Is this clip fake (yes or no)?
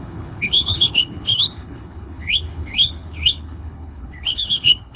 yes